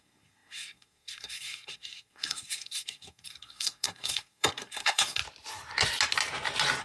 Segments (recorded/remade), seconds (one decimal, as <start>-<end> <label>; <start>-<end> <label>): 0.0-5.2 remade; 5.2-6.8 recorded